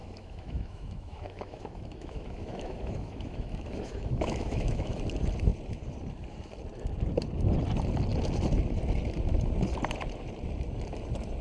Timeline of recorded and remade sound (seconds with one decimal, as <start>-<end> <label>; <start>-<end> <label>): 0.0-5.0 remade; 5.0-11.4 recorded